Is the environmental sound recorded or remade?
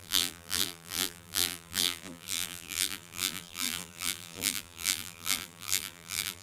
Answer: remade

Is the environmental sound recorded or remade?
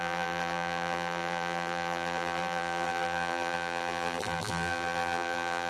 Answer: remade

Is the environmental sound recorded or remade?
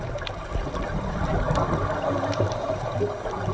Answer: recorded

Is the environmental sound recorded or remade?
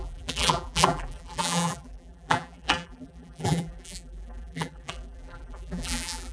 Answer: remade